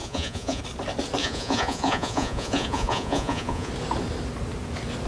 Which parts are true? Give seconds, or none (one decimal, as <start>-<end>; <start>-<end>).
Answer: 0.6-1.2; 3.7-5.1